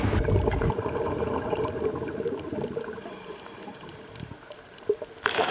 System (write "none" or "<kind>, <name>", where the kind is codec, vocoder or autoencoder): vocoder, BigVGAN v2